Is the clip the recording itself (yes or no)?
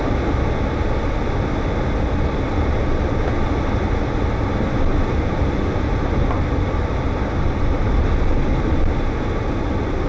yes